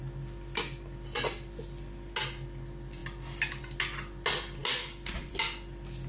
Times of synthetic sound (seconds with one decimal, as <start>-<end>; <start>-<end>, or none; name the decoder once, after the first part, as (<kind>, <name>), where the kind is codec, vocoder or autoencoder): none